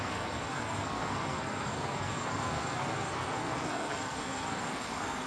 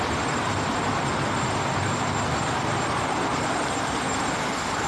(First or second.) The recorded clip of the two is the second